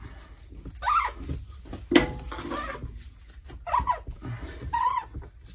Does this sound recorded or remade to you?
recorded